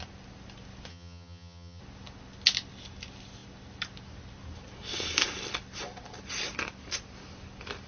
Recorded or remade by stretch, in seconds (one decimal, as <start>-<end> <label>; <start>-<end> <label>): 0.0-0.9 recorded; 0.9-1.8 remade; 1.8-7.9 recorded